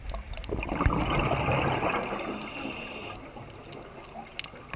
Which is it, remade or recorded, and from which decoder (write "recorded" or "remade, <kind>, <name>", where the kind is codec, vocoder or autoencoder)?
recorded